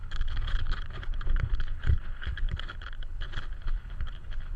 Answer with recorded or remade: remade